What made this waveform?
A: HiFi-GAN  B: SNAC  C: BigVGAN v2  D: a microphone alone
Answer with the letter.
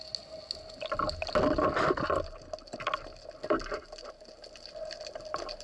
D